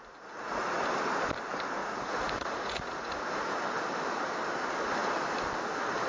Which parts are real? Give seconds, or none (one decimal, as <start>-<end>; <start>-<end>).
0.7-1.8; 3.3-6.1